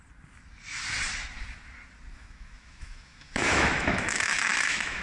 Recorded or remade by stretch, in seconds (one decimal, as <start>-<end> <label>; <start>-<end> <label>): 0.0-2.1 recorded; 2.1-5.0 remade